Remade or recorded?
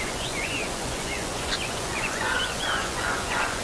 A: remade